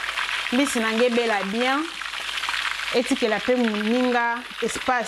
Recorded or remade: recorded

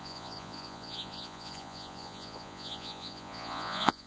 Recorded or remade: remade